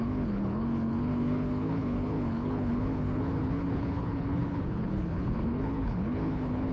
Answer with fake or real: fake